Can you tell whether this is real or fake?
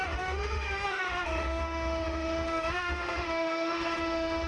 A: fake